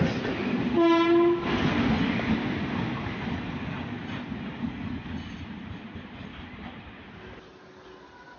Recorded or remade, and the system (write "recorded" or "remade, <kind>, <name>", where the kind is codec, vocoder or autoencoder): recorded